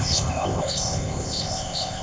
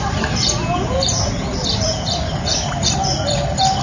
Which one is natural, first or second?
second